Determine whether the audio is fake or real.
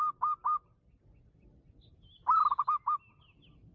real